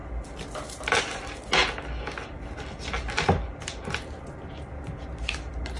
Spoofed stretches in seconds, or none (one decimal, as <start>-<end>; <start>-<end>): none